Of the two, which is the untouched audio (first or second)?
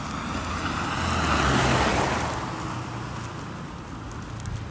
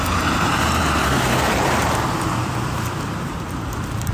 first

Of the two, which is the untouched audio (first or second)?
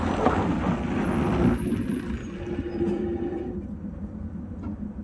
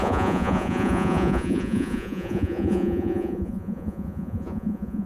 first